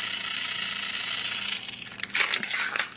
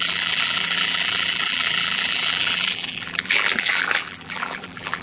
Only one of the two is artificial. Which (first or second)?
second